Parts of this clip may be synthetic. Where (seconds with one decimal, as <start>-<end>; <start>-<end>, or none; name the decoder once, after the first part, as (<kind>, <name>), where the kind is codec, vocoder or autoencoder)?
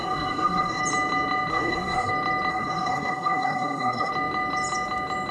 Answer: 0.0-0.8 (codec, SNAC); 1.5-2.1; 2.5-4.1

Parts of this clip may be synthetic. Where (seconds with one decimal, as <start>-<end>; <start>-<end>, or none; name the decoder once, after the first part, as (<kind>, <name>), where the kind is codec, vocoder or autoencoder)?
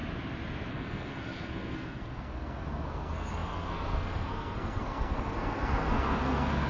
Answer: 0.7-6.7 (codec, SNAC)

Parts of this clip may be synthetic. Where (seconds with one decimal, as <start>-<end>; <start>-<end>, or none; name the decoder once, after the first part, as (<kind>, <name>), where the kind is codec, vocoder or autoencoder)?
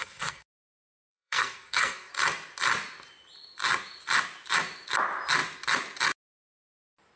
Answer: 0.0-2.1 (codec, SNAC)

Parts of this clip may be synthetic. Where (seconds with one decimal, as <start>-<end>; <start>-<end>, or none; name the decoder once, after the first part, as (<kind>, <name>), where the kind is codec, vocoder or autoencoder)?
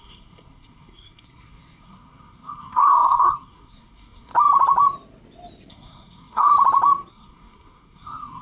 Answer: 0.0-4.3 (codec, SNAC); 5.7-6.5; 7.1-8.4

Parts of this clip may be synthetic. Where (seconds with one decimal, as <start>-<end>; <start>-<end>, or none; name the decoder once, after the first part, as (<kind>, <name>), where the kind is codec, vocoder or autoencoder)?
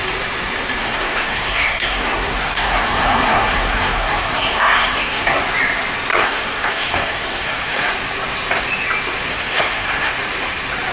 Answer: 0.8-5.4 (codec, SNAC); 6.1-7.9; 9.3-10.1